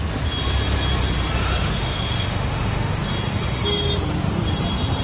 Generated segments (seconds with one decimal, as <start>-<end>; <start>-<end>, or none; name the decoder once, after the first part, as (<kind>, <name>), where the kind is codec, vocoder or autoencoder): 1.4-2.9 (autoencoder, DAC-VAE)